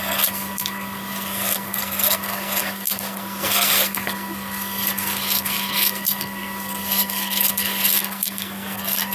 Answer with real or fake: fake